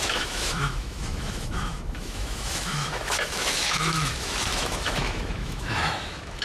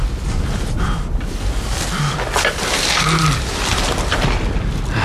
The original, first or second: second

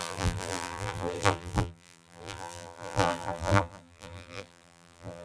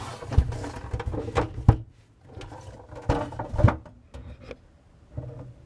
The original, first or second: second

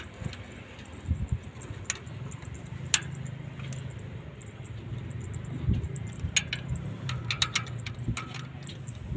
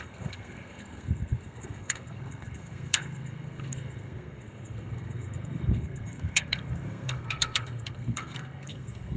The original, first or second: first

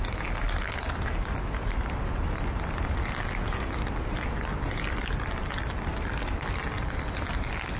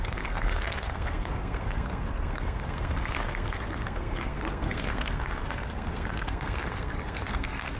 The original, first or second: first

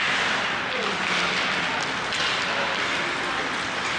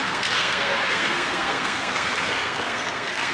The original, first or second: first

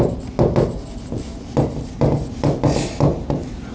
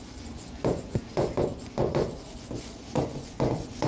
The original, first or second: first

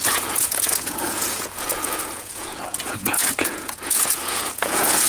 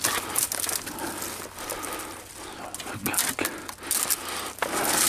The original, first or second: second